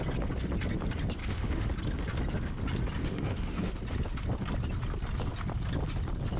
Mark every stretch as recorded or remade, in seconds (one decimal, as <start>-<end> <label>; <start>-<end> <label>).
0.0-1.2 recorded; 1.2-1.7 remade; 1.7-3.0 recorded; 3.0-3.7 remade; 3.7-6.4 recorded